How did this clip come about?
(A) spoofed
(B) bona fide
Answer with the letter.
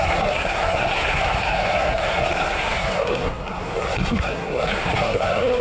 A